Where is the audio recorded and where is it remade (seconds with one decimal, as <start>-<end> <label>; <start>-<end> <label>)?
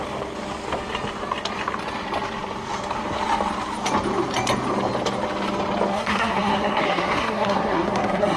0.0-5.9 recorded; 5.9-8.4 remade